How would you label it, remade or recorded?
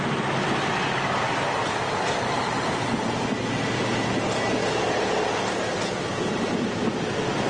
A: recorded